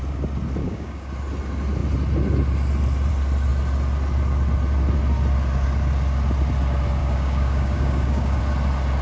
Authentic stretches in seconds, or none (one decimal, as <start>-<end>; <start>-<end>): 0.0-0.6; 1.1-7.0; 8.4-9.0